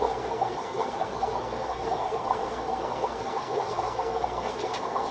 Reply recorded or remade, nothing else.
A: remade